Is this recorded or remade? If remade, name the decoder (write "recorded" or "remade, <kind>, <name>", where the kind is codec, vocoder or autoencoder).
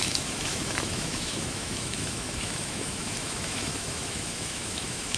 remade, autoencoder, DAC-VAE